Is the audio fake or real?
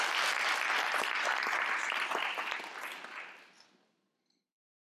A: real